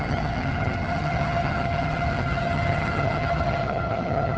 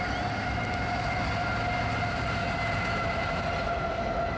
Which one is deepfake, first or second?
first